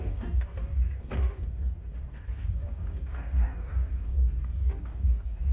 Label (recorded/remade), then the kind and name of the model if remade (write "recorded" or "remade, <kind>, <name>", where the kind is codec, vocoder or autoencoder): remade, codec, DAC